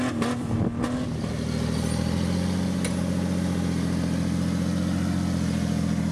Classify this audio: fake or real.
real